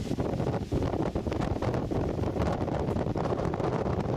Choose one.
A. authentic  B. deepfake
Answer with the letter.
A